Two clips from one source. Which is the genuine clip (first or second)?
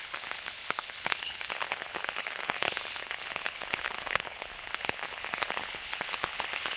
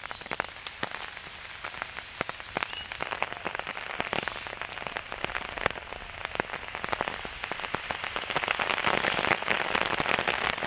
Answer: second